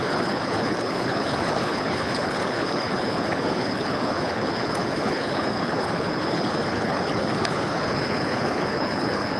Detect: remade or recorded remade